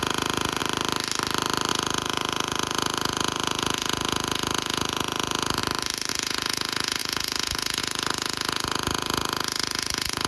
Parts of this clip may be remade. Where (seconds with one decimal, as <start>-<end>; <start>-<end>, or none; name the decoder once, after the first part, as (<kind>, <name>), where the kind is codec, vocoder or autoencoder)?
0.0-0.6 (vocoder, Vocos); 1.7-5.6; 6.1-10.3